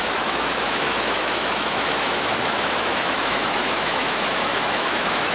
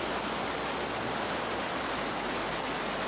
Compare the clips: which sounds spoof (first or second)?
first